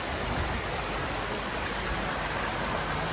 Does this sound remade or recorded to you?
recorded